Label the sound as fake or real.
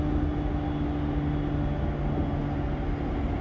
real